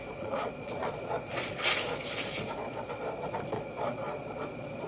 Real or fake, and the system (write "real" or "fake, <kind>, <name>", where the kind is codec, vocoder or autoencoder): fake, vocoder, Vocos